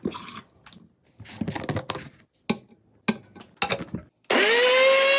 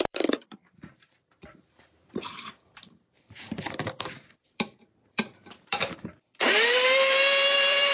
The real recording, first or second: first